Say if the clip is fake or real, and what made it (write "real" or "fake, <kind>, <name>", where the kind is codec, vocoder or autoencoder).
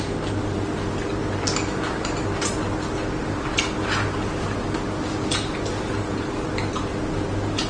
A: real